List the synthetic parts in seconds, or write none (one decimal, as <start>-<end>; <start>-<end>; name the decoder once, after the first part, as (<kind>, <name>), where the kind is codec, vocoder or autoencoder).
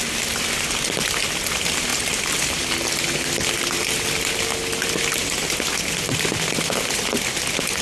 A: none